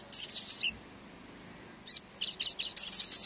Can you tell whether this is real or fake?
real